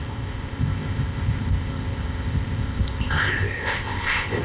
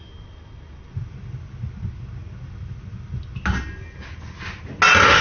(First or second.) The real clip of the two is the second